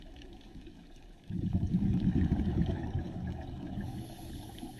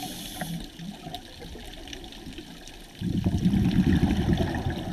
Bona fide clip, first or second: second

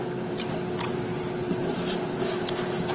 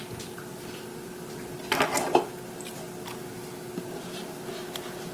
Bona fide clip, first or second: second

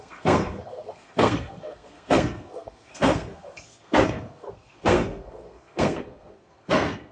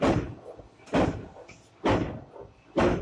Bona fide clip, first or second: second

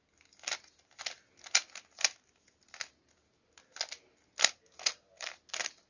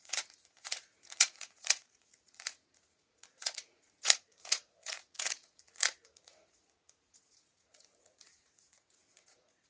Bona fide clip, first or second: first